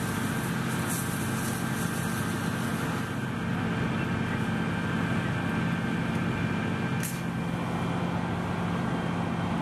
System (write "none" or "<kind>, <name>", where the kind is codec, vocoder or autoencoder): none